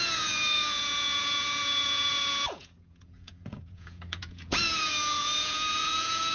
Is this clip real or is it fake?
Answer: fake